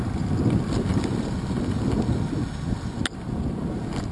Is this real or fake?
real